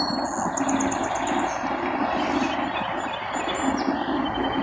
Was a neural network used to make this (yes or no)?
no